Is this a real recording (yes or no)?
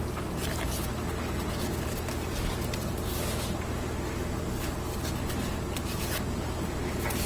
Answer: yes